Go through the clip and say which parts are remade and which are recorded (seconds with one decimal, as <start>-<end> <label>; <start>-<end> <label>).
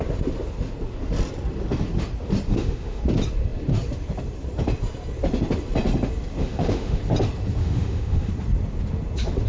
0.0-2.5 recorded; 2.5-3.0 remade; 3.0-6.4 recorded; 6.4-7.0 remade; 7.0-7.6 recorded; 7.6-8.3 remade; 8.3-9.5 recorded